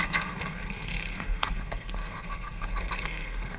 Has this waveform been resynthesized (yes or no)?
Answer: yes